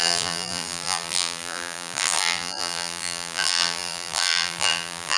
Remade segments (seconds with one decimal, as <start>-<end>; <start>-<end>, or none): 0.0-5.2